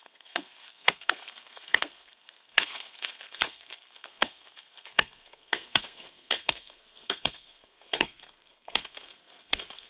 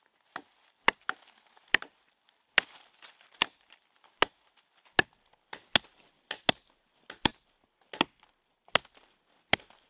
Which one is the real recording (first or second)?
second